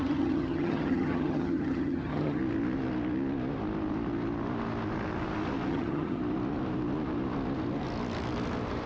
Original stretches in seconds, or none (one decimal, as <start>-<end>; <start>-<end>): 2.4-5.7; 6.2-8.9